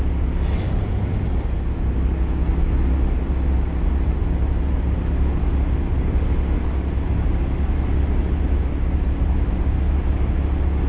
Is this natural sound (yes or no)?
yes